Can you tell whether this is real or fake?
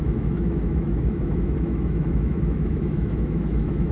fake